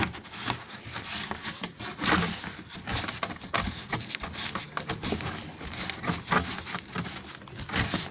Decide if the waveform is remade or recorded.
recorded